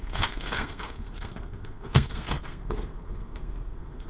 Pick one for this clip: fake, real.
fake